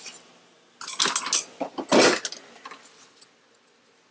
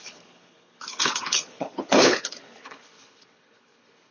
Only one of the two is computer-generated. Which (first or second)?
second